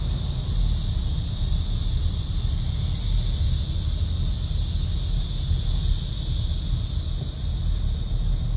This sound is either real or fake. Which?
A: real